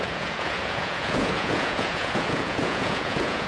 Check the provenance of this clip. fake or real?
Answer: fake